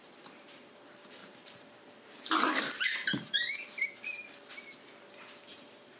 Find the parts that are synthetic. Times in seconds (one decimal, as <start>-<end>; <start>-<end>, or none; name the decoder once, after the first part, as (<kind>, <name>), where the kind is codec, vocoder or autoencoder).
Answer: 0.0-6.0 (vocoder, BigVGAN v2)

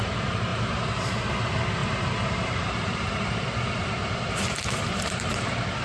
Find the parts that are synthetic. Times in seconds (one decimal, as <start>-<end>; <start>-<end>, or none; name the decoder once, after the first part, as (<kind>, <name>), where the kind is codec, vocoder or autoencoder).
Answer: 0.5-1.1 (vocoder, BigVGAN v2); 1.8-5.3

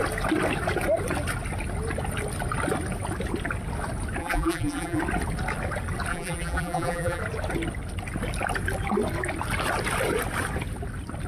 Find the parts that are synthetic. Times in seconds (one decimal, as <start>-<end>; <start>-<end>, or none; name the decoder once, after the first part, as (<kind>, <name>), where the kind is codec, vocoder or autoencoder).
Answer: 4.2-5.0 (vocoder, BigVGAN v2); 6.1-7.2

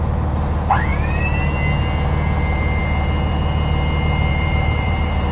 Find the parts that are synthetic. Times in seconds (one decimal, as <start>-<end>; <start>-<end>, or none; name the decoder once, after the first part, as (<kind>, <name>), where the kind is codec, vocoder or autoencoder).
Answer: 4.3-5.3 (vocoder, BigVGAN v2)

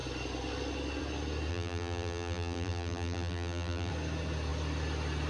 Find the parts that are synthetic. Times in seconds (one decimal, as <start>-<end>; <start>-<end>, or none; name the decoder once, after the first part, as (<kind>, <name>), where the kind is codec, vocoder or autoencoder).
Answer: 1.5-3.9 (vocoder, BigVGAN v2)

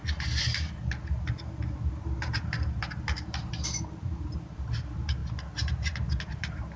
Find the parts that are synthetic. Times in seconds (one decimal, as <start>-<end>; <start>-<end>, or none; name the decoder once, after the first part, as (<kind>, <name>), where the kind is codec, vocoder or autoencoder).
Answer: 2.3-5.2 (vocoder, BigVGAN v2); 6.2-6.8